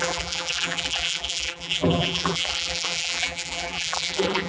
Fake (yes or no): yes